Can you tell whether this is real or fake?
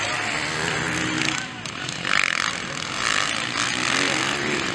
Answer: real